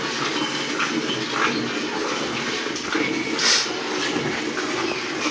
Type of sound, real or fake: real